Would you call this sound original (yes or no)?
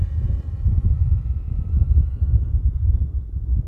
yes